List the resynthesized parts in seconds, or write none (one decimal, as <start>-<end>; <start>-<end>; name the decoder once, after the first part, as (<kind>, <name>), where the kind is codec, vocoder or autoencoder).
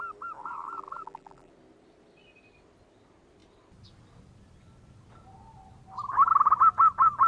0.4-1.5 (vocoder, BigVGAN v2)